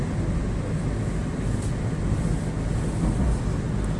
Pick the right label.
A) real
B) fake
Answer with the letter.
A